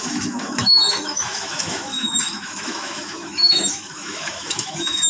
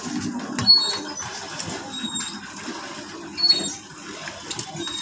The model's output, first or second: first